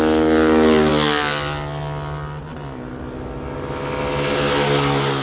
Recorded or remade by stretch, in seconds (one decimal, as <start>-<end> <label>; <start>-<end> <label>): 0.0-5.2 recorded